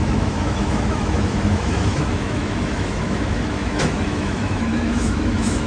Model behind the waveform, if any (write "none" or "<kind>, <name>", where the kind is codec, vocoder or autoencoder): autoencoder, DAC-VAE